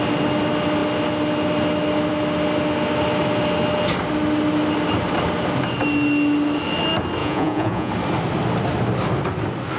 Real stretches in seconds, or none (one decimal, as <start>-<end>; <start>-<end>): 0.0-7.2; 7.9-9.8